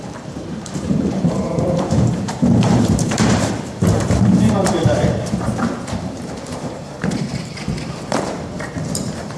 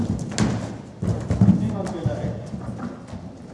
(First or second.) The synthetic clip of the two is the first